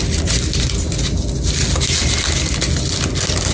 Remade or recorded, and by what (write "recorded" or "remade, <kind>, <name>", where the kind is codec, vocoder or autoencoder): recorded